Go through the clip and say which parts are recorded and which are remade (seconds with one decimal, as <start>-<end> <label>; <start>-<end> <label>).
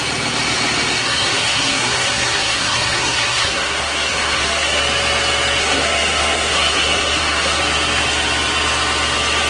0.0-1.0 recorded; 1.0-4.8 remade; 4.8-5.6 recorded; 5.6-7.6 remade; 7.6-9.5 recorded